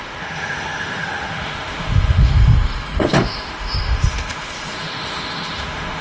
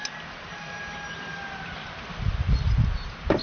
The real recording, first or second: second